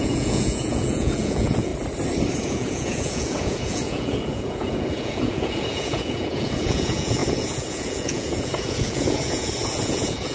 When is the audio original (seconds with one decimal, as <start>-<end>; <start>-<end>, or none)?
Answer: 1.7-2.4